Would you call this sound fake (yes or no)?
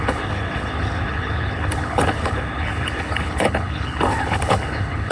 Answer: yes